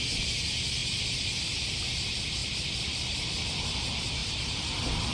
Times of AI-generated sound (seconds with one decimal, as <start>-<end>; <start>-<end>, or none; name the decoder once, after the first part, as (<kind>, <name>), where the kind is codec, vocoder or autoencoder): 2.4-3.4 (vocoder, BigVGAN v2); 4.2-5.1